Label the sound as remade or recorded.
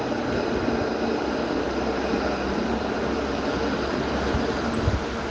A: recorded